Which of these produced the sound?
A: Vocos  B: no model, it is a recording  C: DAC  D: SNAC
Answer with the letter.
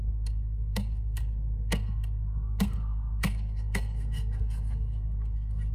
D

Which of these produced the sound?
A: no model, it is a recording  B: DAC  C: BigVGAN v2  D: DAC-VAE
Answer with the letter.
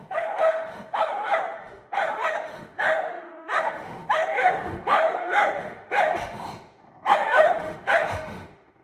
D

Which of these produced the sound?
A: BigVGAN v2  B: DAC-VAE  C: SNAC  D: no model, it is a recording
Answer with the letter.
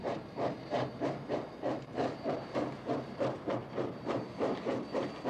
A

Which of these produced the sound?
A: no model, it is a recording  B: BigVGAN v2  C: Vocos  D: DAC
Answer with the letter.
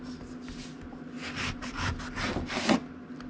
A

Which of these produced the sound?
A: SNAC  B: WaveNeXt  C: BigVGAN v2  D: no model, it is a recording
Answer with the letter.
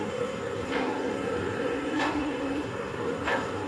A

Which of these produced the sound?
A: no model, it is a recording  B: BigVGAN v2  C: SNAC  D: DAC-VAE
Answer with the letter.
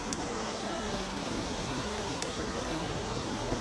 C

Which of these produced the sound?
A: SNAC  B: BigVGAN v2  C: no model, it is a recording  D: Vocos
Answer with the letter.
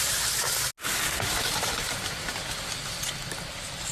C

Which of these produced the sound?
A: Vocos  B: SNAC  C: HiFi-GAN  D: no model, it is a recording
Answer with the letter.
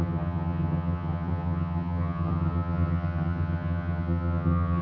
C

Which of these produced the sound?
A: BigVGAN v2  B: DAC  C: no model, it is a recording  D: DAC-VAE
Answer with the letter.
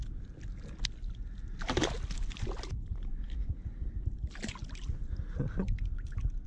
C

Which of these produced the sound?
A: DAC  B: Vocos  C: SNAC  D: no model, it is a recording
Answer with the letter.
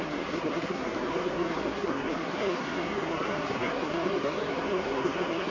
C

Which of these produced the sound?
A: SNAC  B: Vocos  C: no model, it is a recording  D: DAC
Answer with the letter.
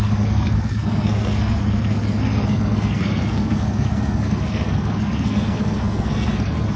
A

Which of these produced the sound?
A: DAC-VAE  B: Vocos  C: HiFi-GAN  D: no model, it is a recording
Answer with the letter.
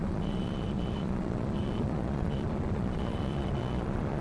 B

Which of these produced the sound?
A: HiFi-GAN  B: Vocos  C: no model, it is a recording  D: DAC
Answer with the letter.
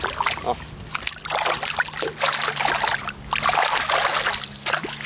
C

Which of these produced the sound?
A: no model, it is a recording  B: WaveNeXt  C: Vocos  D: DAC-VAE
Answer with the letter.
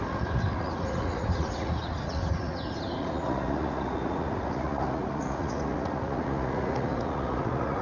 C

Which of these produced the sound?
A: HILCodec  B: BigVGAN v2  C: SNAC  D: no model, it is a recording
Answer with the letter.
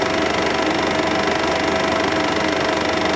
D